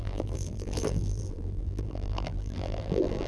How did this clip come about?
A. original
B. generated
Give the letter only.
B